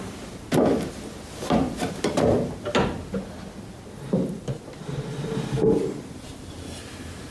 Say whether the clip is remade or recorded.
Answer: recorded